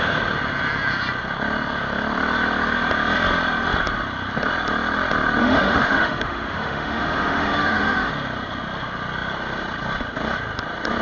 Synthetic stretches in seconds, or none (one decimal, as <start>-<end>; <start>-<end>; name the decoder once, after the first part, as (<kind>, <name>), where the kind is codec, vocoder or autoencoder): 5.4-8.1 (autoencoder, DAC-VAE)